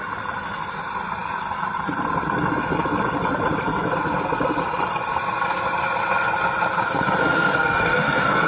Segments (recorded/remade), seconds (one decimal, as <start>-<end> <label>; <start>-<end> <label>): 0.0-7.2 recorded; 7.2-8.5 remade